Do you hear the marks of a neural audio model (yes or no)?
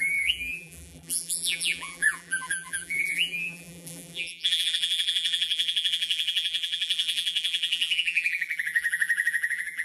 yes